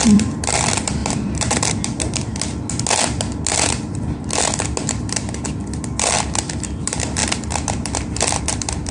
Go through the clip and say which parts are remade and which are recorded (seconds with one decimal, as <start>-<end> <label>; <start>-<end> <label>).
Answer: 0.0-2.3 remade; 2.3-6.8 recorded; 6.8-8.9 remade